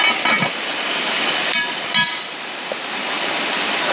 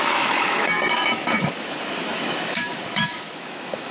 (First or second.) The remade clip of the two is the second